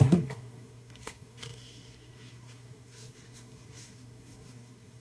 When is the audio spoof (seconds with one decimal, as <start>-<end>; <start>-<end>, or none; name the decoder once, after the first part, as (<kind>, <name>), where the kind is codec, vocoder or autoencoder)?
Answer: 0.0-5.0 (codec, SNAC)